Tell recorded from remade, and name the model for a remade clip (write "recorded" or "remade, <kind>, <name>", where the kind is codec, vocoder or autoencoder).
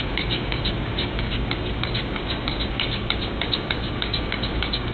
remade, codec, DAC